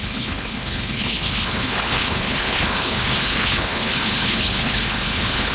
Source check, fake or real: fake